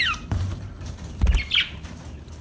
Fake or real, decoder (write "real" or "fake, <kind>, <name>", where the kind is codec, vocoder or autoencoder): fake, vocoder, BigVGAN v2